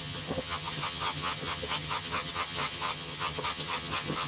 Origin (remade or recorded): remade